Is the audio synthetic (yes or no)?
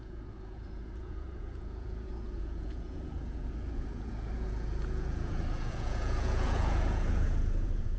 yes